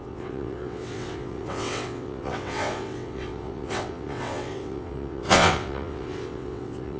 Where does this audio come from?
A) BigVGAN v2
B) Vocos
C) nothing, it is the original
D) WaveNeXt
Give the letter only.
D